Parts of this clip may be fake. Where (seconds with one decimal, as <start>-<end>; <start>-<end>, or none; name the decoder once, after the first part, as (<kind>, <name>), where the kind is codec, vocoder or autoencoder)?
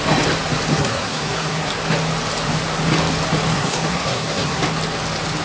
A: 0.7-1.7 (codec, SNAC); 3.5-4.6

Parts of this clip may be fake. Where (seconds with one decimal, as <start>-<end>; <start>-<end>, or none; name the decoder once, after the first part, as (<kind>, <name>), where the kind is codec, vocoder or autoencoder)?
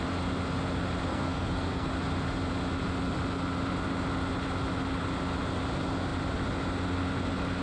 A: 1.1-1.9 (codec, SNAC)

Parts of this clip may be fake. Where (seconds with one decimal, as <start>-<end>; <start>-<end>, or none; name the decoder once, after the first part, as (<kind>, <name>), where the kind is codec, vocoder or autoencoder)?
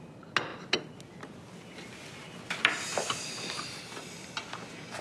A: none